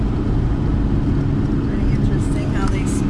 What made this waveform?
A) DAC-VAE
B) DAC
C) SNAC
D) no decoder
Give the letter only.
D